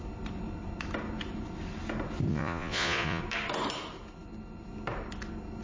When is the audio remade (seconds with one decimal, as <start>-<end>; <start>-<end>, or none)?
2.3-3.2